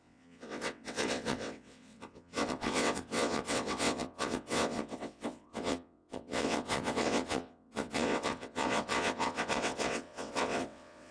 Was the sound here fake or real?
fake